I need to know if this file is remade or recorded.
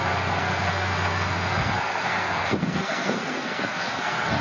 remade